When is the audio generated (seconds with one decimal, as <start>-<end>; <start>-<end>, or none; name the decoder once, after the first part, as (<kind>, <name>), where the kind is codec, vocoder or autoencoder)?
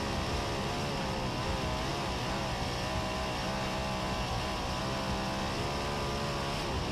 1.9-2.4 (vocoder, BigVGAN v2)